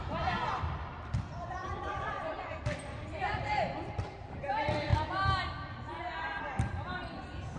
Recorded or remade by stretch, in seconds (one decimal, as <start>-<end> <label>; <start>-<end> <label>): 0.0-1.6 recorded; 1.6-2.5 remade; 2.5-7.6 recorded